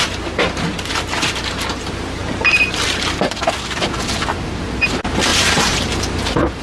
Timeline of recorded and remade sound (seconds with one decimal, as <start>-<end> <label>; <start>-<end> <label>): 0.0-2.2 recorded; 2.2-2.8 remade; 2.8-5.3 recorded; 5.3-6.6 remade